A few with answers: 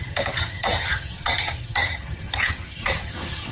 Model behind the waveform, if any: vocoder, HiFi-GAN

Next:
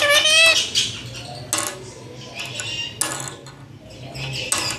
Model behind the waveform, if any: none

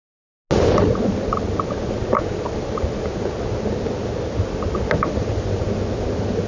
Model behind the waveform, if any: none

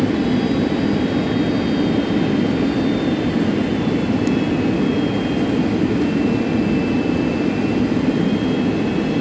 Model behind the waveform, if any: none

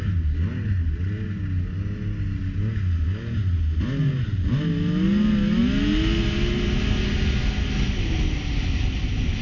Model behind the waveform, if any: none